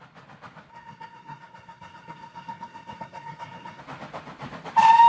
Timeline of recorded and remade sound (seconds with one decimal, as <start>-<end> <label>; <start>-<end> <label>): 0.0-0.7 recorded; 0.7-3.8 remade; 3.8-5.1 recorded